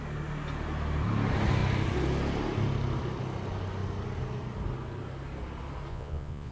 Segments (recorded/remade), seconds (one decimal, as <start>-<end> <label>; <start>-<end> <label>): 0.0-5.9 recorded; 5.9-6.5 remade

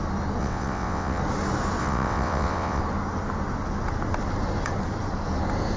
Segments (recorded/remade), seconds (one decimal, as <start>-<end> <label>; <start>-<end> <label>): 0.0-0.4 recorded; 0.4-1.2 remade; 1.2-1.8 recorded; 1.8-2.8 remade; 2.8-5.8 recorded

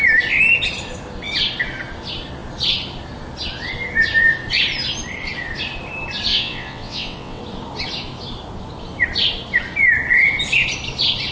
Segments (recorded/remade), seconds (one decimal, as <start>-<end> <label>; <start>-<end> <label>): 0.0-6.3 recorded; 6.3-7.4 remade; 7.4-11.3 recorded

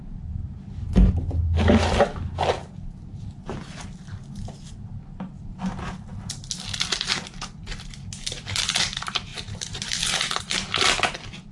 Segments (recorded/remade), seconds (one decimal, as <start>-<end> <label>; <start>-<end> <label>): 0.0-9.3 recorded; 9.3-10.4 remade; 10.4-11.5 recorded

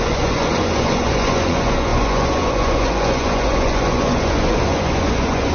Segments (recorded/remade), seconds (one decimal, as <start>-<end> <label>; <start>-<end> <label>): 0.0-5.5 remade

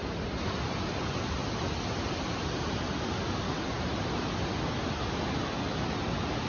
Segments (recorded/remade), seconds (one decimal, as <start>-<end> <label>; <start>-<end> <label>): 0.0-6.5 recorded

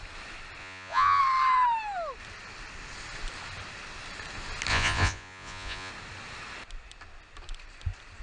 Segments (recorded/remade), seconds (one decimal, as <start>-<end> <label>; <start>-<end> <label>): 0.0-0.6 recorded; 0.6-1.2 remade; 1.2-4.7 recorded; 4.7-5.9 remade; 5.9-8.2 recorded

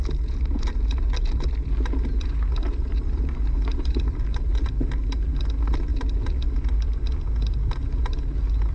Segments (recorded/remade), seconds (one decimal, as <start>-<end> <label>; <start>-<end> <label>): 0.0-8.7 recorded